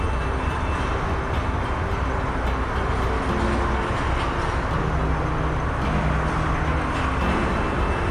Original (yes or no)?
yes